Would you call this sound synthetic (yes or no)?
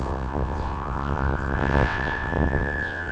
yes